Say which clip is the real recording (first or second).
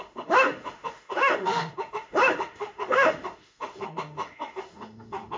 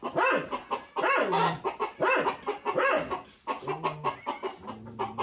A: second